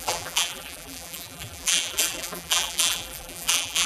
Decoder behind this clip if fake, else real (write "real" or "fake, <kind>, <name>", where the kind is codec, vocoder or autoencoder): fake, vocoder, BigVGAN v2